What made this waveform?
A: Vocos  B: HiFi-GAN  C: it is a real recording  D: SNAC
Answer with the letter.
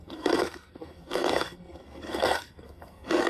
D